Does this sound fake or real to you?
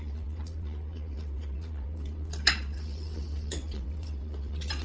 fake